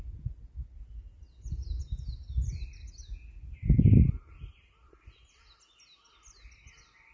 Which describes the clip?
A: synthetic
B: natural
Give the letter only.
B